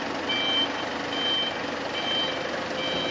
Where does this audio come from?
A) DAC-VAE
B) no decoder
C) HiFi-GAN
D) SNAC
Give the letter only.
B